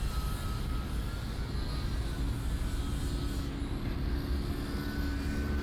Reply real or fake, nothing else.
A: real